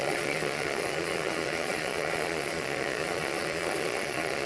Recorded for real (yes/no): no